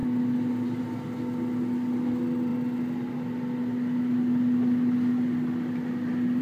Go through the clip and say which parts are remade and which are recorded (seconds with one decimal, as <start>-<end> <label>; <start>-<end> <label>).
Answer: 0.0-6.4 recorded